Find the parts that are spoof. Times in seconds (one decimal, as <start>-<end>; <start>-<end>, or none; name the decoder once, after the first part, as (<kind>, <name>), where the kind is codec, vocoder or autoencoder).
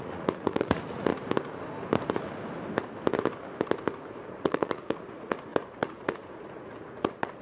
0.0-1.1 (vocoder, Vocos); 4.3-7.4